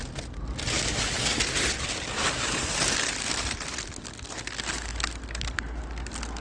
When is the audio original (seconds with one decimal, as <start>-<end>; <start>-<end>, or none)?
0.0-6.4